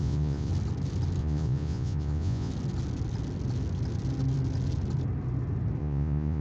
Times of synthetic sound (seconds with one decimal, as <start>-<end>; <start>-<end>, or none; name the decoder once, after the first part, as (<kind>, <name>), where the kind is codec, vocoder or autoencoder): 0.0-0.5 (vocoder, Vocos); 1.2-2.5; 5.8-6.4